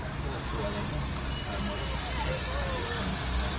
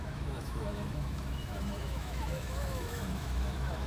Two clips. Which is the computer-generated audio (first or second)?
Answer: second